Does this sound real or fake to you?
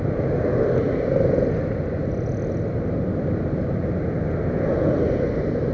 real